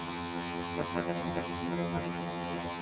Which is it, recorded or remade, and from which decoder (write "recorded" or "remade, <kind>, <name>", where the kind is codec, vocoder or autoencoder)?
remade, vocoder, HiFi-GAN